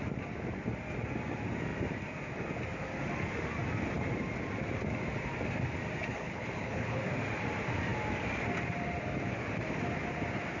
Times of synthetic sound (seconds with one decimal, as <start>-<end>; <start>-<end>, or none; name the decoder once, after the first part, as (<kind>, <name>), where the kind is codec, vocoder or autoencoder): 6.1-7.0 (codec, HILCodec)